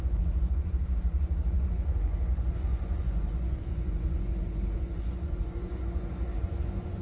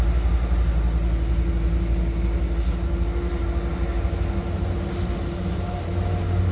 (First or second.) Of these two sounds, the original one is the second